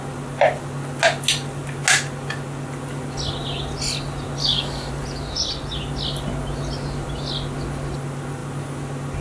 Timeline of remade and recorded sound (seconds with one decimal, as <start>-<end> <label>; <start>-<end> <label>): 0.0-4.4 recorded; 4.4-4.9 remade; 4.9-9.2 recorded